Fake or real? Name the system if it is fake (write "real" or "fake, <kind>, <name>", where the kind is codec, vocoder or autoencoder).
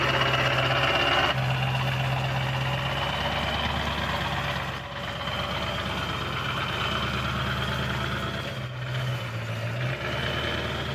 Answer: real